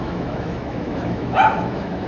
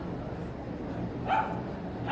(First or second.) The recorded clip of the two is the second